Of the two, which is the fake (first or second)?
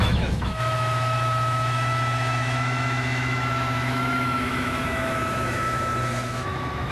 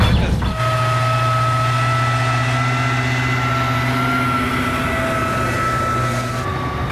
first